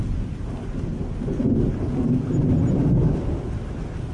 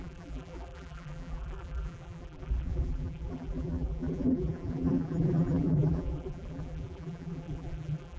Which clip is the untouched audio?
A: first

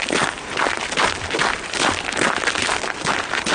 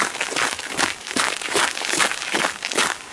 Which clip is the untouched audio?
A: first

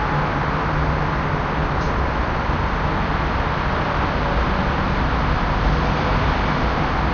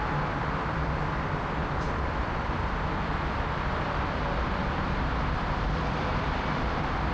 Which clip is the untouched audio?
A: first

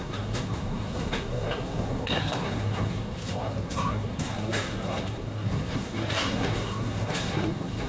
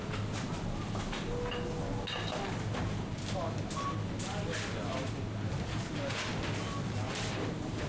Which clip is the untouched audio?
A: second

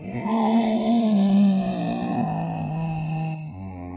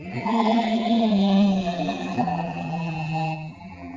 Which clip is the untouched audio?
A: first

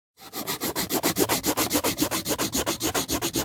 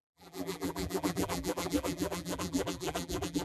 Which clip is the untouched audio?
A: first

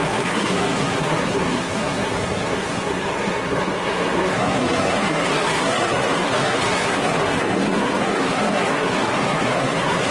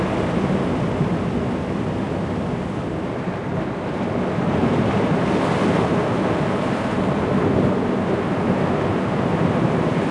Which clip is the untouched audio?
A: second